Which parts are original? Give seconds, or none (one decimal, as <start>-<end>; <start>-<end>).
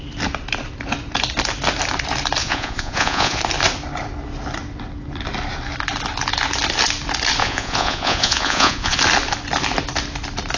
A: 0.0-2.4; 3.4-7.4; 9.0-10.6